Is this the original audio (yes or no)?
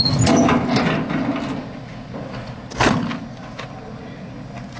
yes